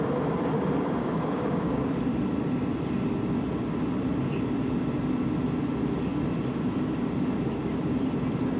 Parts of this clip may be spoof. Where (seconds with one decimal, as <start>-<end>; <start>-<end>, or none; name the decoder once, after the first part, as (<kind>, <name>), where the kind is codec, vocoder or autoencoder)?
1.0-1.9 (codec, DAC)